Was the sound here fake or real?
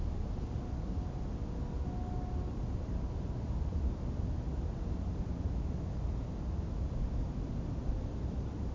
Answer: real